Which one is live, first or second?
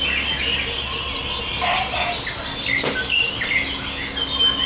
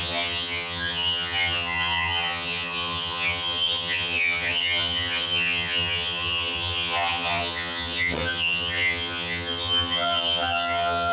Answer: first